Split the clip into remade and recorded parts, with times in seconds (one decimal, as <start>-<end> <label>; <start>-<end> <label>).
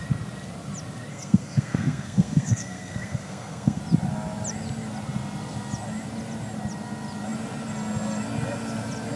0.0-1.1 recorded; 1.1-3.8 remade; 3.8-9.2 recorded